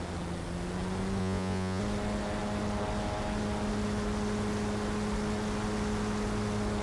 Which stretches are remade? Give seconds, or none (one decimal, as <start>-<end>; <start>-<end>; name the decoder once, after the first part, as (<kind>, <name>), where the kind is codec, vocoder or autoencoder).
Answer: 1.2-1.8 (vocoder, Vocos)